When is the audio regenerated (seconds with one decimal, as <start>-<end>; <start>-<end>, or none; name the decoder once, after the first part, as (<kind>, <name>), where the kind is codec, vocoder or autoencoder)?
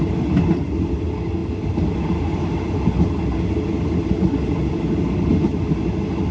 none